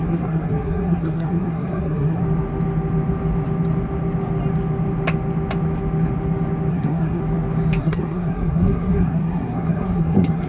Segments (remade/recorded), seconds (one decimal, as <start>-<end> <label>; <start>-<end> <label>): 0.0-2.2 remade; 2.2-6.7 recorded; 6.7-7.2 remade; 7.2-7.8 recorded; 7.8-10.5 remade